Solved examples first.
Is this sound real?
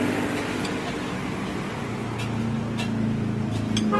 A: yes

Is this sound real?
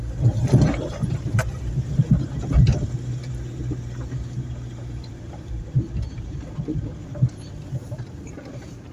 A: no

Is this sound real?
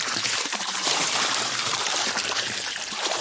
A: no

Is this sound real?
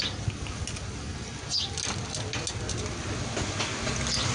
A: yes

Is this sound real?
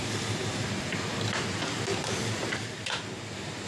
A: no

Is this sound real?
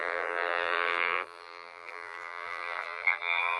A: no